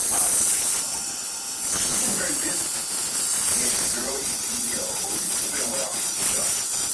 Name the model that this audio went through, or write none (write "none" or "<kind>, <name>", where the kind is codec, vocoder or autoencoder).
vocoder, Vocos